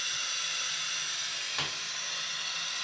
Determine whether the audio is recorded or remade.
recorded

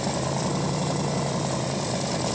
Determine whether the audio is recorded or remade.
remade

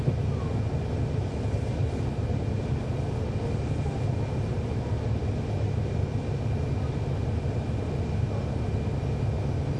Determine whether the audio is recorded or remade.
recorded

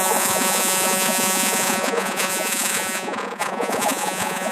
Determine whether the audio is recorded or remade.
remade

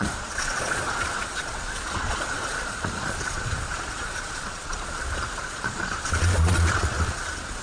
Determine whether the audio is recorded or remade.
remade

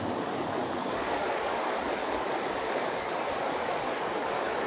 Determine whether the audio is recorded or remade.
remade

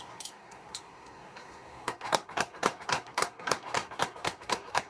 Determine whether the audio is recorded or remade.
remade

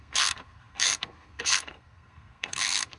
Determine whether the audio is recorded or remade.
remade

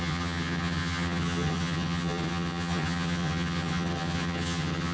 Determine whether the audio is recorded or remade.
remade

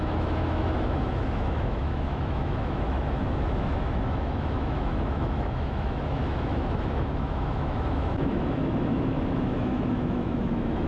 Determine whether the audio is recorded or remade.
remade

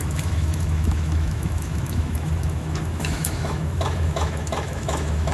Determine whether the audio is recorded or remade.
remade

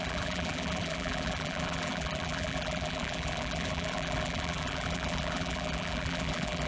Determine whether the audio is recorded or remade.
remade